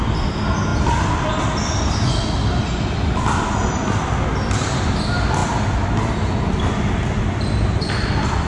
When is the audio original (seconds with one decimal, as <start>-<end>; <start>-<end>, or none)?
0.0-8.5